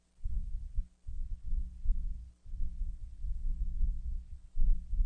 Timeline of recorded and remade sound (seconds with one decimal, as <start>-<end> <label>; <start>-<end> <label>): 0.0-5.1 recorded